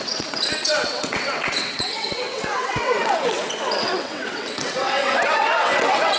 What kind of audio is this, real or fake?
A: fake